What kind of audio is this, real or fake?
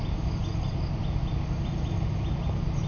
real